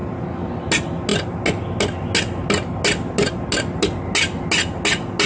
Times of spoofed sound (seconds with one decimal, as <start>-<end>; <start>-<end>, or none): none

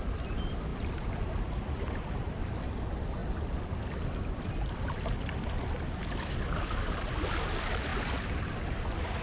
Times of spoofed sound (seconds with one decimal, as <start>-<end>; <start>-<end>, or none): 0.7-2.7

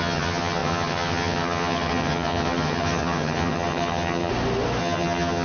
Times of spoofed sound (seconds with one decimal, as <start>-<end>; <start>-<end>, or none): 0.0-4.3; 4.8-5.4

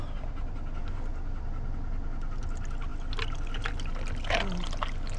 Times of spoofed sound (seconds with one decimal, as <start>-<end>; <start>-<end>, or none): none

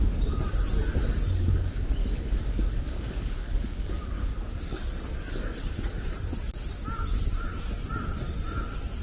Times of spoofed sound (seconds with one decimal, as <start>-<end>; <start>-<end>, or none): 2.0-5.6